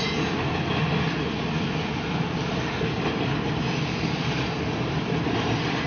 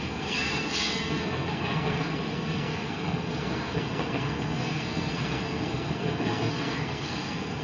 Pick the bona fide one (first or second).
first